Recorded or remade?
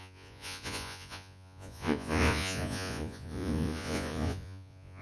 remade